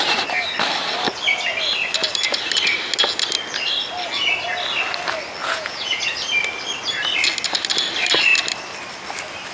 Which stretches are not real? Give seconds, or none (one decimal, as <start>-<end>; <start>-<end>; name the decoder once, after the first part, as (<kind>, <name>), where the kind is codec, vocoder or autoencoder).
5.4-6.0 (vocoder, Vocos)